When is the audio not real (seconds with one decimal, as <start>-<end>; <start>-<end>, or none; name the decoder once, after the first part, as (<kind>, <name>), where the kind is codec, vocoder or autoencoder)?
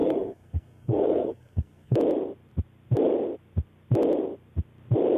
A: 0.0-2.0 (codec, SNAC)